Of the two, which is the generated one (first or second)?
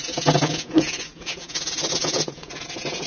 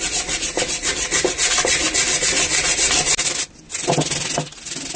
first